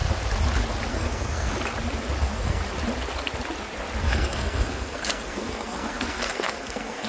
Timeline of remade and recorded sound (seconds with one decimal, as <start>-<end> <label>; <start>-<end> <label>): 0.0-0.9 recorded; 0.9-1.5 remade; 1.5-2.2 recorded; 2.2-2.6 remade; 2.6-4.0 recorded; 4.0-7.1 remade

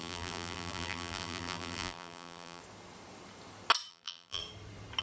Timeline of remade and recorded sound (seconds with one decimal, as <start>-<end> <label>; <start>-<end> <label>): 0.0-2.6 remade; 2.6-3.9 recorded; 3.9-4.4 remade; 4.4-5.0 recorded

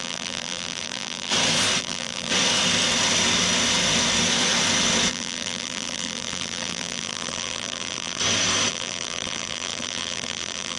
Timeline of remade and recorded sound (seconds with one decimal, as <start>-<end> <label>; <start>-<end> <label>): 0.0-1.3 remade; 1.3-1.8 recorded; 1.8-2.3 remade; 2.3-5.1 recorded; 5.1-8.2 remade; 8.2-8.7 recorded; 8.7-10.8 remade